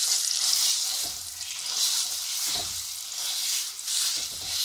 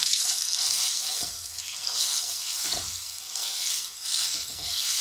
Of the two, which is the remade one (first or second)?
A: second